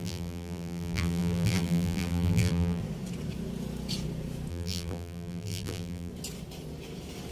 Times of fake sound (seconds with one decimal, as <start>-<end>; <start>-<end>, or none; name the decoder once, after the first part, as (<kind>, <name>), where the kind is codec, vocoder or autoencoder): 0.0-2.8 (vocoder, BigVGAN v2); 4.5-6.1